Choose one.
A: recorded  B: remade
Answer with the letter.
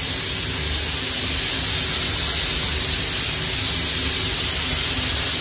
A